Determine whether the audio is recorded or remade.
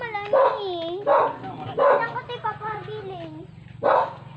recorded